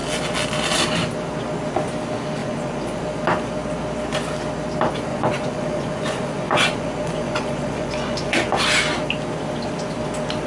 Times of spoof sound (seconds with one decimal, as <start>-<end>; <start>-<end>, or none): 2.4-3.0; 5.1-8.6